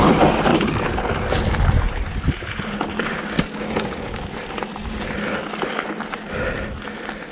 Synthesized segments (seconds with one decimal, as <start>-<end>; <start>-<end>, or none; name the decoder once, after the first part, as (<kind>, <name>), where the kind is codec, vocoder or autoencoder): 0.5-1.0 (codec, DAC); 2.9-4.3